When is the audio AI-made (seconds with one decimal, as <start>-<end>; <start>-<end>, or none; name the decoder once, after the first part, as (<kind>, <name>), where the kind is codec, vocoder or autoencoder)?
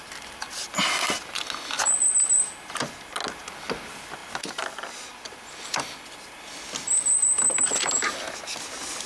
none